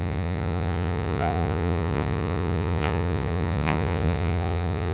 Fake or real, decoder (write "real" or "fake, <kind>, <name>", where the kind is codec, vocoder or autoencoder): fake, vocoder, Vocos